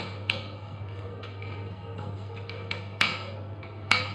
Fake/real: fake